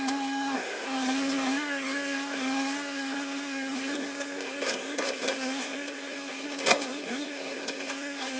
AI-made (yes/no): yes